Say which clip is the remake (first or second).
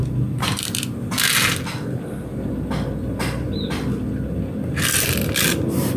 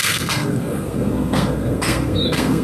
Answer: second